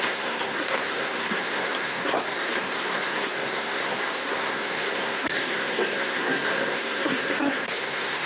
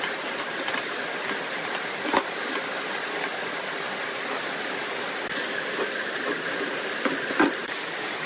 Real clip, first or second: second